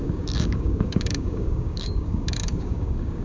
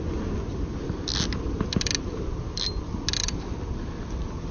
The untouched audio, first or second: second